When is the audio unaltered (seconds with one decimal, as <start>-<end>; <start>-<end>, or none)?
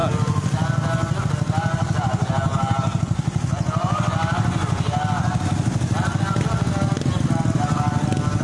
0.0-8.4